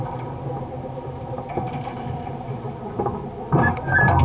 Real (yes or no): yes